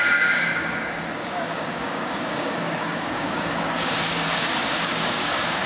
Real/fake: fake